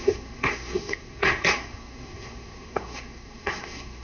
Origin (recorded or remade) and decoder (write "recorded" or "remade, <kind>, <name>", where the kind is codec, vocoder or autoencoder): remade, codec, SNAC